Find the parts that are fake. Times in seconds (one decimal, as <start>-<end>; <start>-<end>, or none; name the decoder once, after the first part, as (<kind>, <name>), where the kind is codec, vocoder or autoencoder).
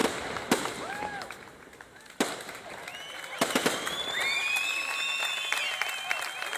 none